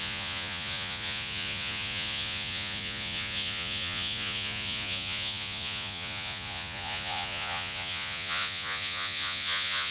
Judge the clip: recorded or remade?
remade